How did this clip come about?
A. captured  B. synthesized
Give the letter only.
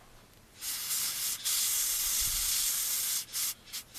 A